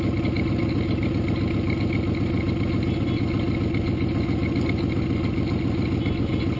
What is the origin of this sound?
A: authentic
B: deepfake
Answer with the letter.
A